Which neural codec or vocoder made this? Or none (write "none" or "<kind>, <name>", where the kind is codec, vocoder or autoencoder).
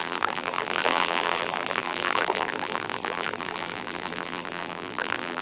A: vocoder, BigVGAN v2